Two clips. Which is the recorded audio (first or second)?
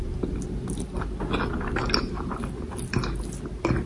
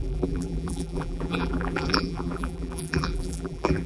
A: first